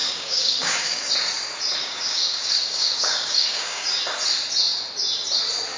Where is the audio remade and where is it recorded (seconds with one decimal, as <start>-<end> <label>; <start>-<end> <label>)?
0.0-1.1 remade; 1.1-1.8 recorded; 1.8-4.0 remade; 4.0-5.8 recorded